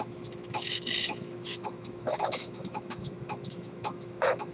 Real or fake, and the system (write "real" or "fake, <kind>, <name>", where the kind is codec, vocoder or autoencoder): fake, autoencoder, DAC-VAE